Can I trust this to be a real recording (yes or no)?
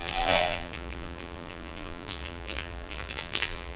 no